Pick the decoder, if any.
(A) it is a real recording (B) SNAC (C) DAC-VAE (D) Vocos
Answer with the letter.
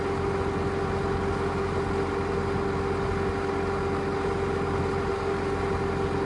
A